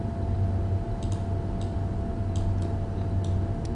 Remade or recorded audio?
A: recorded